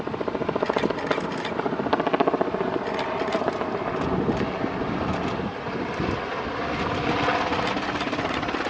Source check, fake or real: real